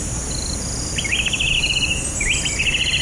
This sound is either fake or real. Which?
real